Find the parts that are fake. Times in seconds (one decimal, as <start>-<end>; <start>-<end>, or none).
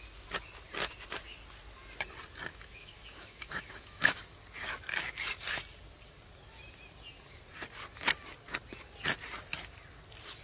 2.5-4.2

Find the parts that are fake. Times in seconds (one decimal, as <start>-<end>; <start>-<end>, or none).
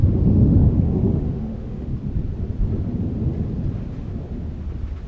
0.0-1.9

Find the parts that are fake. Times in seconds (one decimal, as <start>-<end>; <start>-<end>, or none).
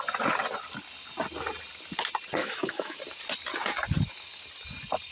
2.4-3.0